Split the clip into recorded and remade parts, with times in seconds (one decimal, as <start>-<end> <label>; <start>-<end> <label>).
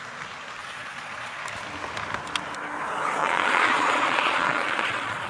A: 0.0-0.6 recorded; 0.6-1.4 remade; 1.4-3.2 recorded; 3.2-5.3 remade